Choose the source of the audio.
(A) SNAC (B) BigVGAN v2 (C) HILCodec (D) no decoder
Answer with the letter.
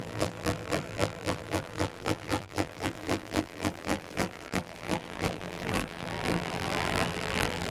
B